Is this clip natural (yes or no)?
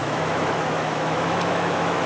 no